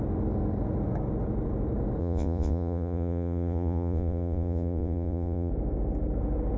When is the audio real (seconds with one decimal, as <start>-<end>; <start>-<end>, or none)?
0.0-2.0; 5.5-6.6